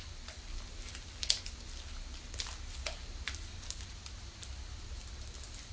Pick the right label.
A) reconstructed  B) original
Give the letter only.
B